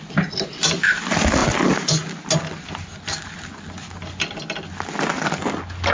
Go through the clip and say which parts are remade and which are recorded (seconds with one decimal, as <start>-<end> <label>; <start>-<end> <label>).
0.0-5.9 recorded